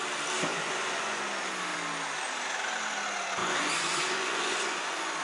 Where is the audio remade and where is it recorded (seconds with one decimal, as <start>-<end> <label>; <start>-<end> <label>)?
0.0-0.5 recorded; 0.5-1.2 remade; 1.2-3.4 recorded; 3.4-5.2 remade